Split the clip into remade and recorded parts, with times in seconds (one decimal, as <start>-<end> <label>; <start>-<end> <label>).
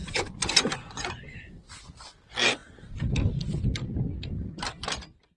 0.0-1.6 remade; 1.6-5.4 recorded